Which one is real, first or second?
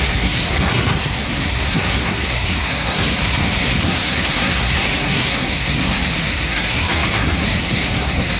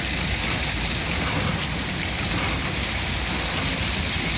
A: second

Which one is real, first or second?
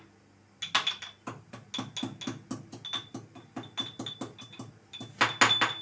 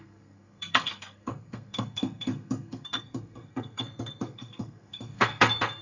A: first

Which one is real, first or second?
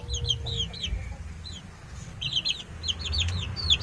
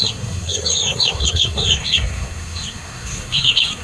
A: first